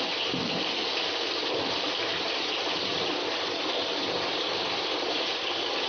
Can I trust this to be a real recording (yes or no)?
no